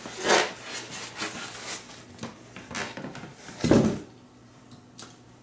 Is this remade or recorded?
recorded